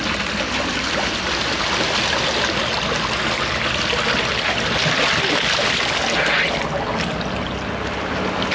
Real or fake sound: real